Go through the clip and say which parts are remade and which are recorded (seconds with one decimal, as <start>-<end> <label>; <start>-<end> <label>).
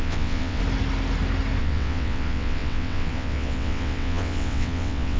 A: 0.0-0.6 remade; 0.6-1.6 recorded; 1.6-5.2 remade